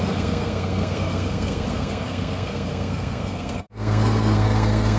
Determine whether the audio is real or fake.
fake